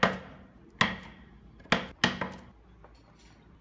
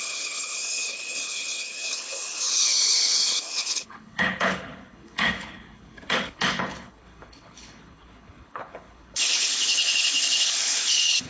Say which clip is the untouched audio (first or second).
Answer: first